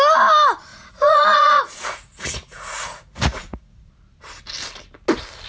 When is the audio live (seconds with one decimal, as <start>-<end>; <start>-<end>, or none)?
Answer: 0.0-0.7; 3.9-5.5